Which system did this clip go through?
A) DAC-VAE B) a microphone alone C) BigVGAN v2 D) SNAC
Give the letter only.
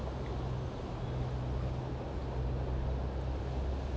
B